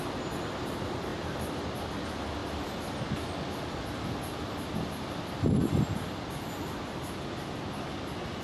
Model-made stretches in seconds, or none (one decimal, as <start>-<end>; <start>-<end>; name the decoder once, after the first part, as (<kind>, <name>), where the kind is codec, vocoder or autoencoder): none